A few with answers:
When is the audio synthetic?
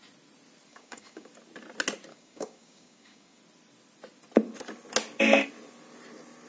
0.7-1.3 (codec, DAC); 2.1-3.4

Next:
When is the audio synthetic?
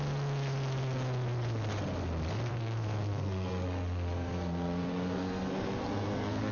2.5-6.5 (codec, SNAC)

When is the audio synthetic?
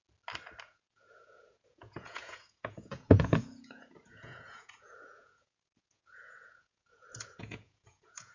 0.6-8.3 (vocoder, Vocos)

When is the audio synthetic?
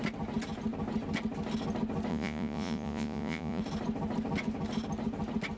2.1-3.6 (vocoder, Vocos)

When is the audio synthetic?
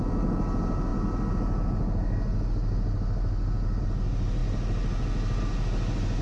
none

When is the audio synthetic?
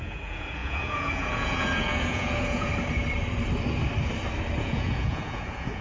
0.0-2.7 (vocoder, Vocos); 4.6-5.8